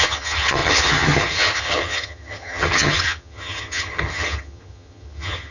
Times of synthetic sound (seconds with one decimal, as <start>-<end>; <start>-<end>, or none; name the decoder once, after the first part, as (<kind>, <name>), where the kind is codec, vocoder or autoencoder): 0.0-5.5 (vocoder, HiFi-GAN)